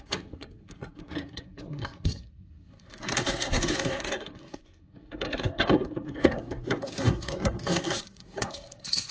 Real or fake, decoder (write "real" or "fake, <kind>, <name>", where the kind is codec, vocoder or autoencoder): fake, codec, SNAC